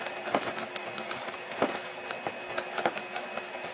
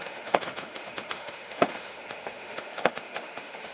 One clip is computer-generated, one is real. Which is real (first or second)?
first